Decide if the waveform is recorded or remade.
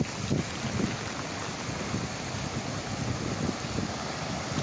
recorded